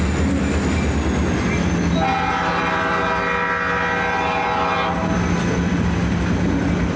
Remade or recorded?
recorded